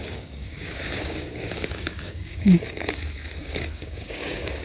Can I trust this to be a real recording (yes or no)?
no